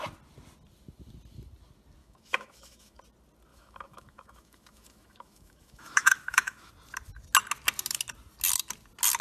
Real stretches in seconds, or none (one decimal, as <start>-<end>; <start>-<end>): 0.0-2.0; 3.0-3.5; 6.7-9.2